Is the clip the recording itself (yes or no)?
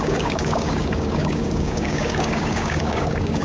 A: no